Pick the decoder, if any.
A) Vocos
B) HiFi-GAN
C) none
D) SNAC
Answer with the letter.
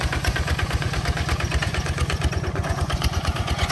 A